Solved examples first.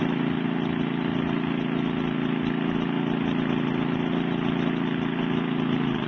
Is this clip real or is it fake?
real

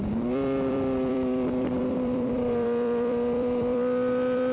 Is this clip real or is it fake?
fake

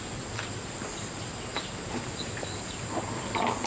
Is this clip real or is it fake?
real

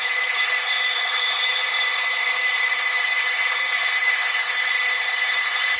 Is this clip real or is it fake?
fake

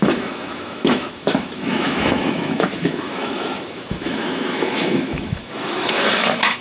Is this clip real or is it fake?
fake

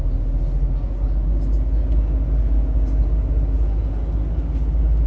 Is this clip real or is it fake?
real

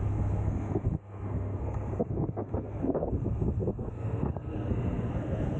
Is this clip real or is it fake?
fake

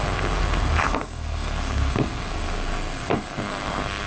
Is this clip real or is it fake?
fake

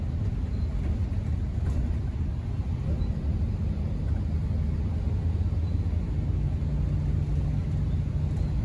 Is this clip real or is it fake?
real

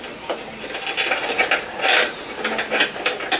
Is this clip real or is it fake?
real